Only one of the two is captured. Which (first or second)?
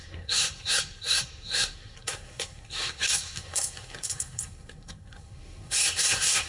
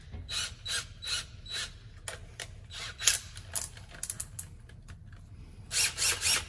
second